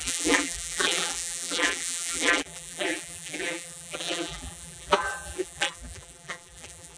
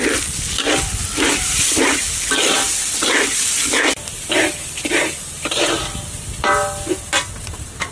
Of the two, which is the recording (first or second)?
second